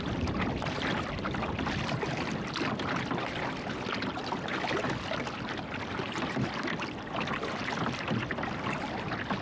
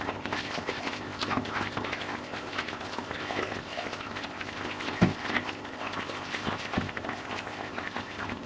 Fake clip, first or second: second